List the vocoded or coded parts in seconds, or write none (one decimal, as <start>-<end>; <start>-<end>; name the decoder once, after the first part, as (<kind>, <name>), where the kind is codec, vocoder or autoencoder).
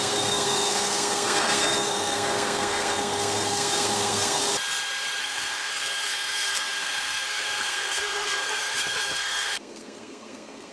0.0-4.4 (codec, SNAC); 5.2-10.7